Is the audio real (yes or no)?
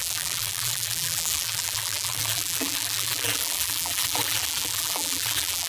no